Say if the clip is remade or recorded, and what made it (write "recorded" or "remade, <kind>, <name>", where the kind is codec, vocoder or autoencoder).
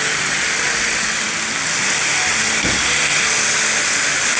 recorded